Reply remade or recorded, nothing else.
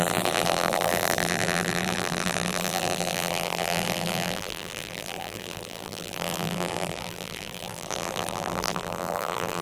remade